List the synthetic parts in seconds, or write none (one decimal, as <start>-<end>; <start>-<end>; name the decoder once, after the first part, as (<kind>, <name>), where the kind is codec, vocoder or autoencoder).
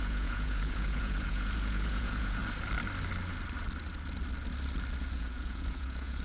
0.0-2.4 (vocoder, Vocos); 5.1-6.2